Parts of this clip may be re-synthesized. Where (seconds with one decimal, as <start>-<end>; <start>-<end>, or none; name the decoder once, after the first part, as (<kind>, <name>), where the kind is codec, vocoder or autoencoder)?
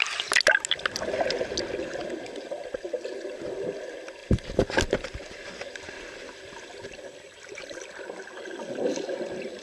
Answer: none